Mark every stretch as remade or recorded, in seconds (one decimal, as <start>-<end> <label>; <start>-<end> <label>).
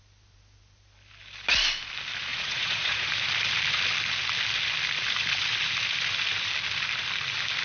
0.0-2.3 recorded; 2.3-3.1 remade; 3.1-7.6 recorded